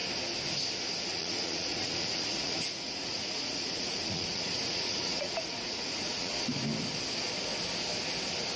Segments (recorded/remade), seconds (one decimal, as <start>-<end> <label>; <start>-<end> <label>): 0.0-1.1 recorded; 1.1-6.3 remade; 6.3-8.6 recorded